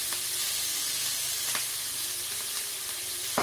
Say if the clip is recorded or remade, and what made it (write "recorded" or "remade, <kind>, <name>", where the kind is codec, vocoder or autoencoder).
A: recorded